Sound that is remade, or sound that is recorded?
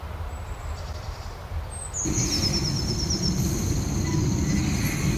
recorded